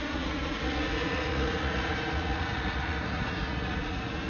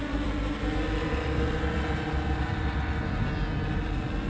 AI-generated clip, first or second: first